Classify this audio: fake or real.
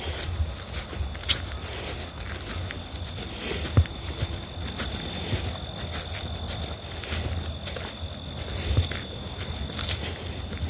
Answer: real